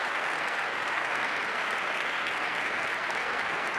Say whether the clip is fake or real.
fake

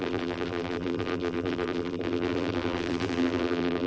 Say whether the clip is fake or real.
fake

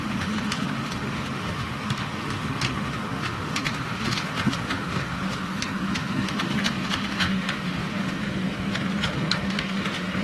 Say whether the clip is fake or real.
fake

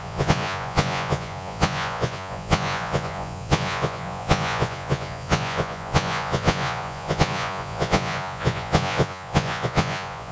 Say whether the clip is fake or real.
fake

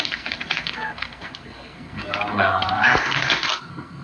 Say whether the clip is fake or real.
fake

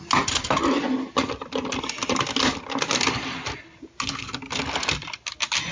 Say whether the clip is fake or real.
real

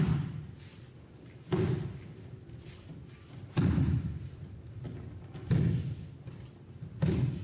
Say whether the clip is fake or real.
real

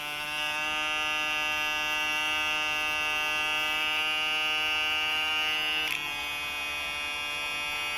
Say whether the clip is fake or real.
real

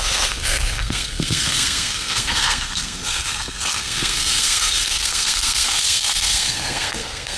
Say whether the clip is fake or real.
fake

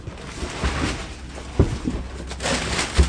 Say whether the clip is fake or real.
real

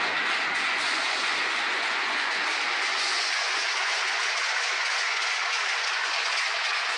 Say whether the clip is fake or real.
fake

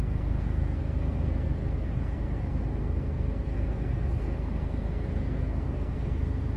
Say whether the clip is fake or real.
fake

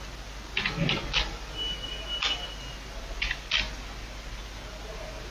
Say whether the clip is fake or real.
real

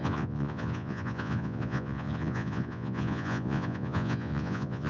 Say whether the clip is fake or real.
fake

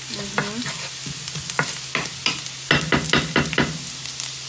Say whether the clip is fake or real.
real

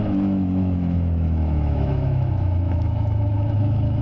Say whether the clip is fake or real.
fake